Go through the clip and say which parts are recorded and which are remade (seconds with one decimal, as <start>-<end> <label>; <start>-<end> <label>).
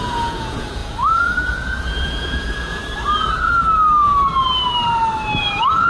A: 0.0-2.8 remade; 2.8-5.4 recorded; 5.4-5.9 remade